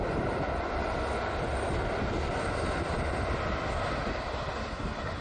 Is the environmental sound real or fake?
real